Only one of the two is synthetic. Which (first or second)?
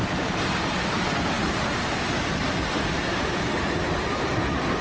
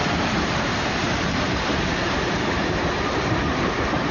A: second